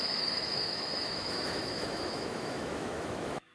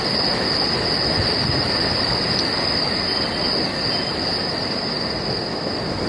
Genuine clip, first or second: second